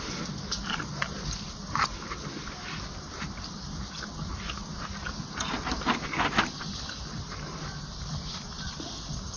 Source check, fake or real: real